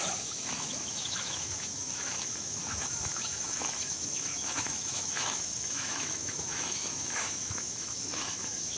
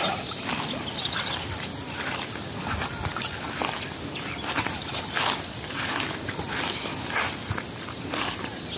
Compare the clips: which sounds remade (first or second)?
first